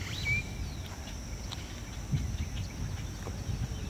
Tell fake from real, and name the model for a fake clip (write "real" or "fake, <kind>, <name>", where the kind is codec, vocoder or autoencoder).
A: real